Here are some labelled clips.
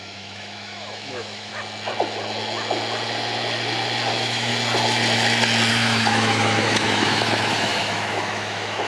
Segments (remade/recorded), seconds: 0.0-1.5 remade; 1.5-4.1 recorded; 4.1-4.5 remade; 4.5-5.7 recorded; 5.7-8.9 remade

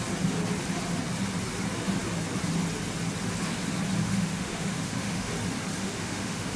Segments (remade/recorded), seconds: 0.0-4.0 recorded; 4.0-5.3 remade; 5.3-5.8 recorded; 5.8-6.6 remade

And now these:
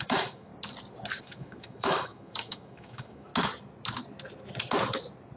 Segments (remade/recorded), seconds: 0.0-0.5 remade; 0.5-1.2 recorded; 1.2-3.3 remade; 3.3-5.4 recorded

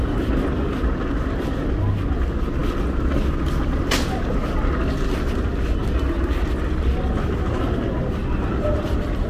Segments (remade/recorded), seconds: 0.0-9.3 recorded

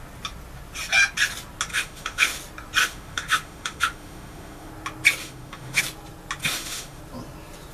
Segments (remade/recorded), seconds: 0.0-1.7 recorded; 1.7-2.4 remade; 2.4-2.8 recorded; 2.8-4.7 remade; 4.7-5.2 recorded; 5.2-5.8 remade; 5.8-6.4 recorded; 6.4-7.0 remade; 7.0-7.7 recorded